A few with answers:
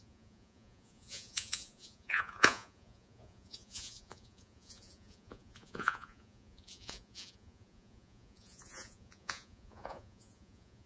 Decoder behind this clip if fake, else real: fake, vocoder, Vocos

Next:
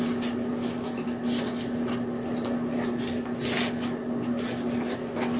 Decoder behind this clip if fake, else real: real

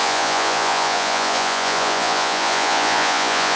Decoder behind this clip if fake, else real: fake, vocoder, Vocos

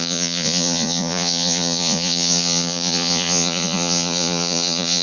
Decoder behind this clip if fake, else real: fake, vocoder, Vocos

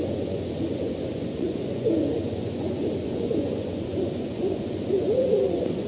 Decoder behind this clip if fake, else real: fake, vocoder, Vocos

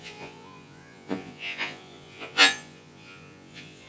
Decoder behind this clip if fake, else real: fake, vocoder, Vocos